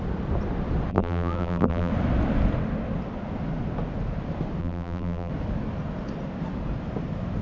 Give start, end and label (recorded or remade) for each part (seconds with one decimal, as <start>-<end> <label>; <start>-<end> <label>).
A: 0.0-0.9 recorded; 0.9-1.9 remade; 1.9-4.6 recorded; 4.6-5.3 remade; 5.3-7.4 recorded